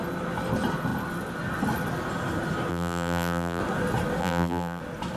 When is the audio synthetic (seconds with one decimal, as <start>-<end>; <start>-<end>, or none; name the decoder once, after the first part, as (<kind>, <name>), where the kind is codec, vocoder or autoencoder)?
2.7-3.6 (vocoder, BigVGAN v2); 4.2-4.8